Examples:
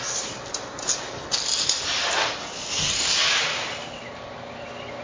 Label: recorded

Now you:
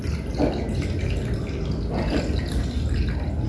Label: recorded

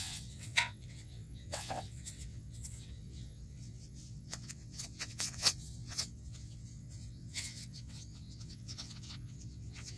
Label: remade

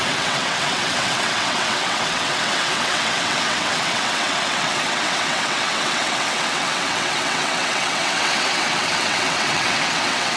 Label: remade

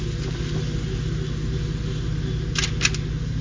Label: recorded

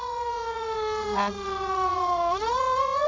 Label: remade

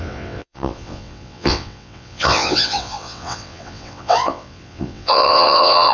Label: remade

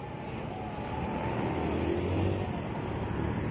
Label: recorded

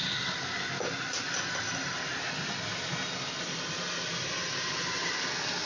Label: recorded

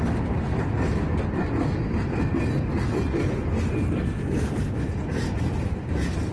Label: recorded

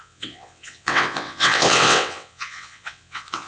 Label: remade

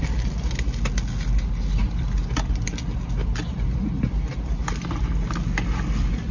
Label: recorded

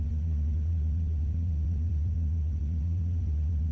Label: remade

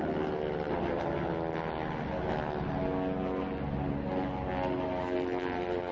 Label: recorded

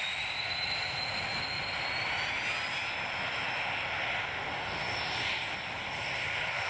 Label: recorded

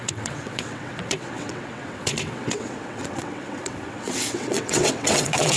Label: remade